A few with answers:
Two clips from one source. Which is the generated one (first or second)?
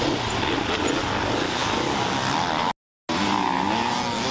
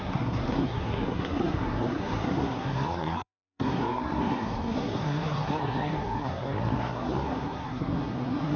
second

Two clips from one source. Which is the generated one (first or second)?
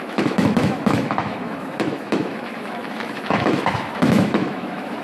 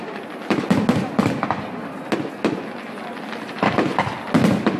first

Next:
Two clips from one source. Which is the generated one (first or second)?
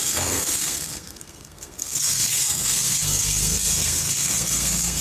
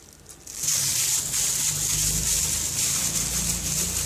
first